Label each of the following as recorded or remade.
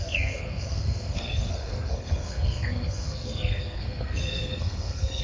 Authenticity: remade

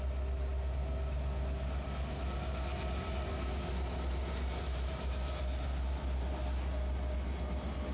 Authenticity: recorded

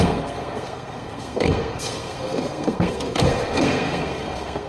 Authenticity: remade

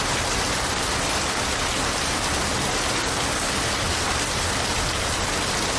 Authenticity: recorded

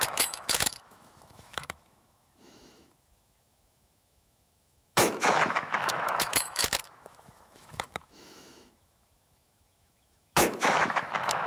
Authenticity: remade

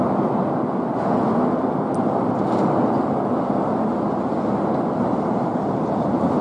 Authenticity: recorded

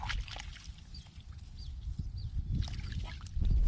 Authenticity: recorded